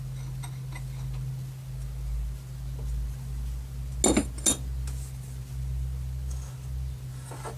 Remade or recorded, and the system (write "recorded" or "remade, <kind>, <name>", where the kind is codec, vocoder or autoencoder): recorded